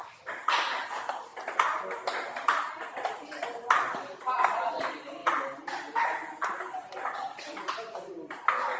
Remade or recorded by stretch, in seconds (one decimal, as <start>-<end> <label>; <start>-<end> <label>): 0.0-8.8 recorded